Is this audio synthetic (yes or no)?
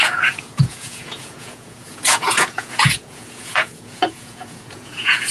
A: yes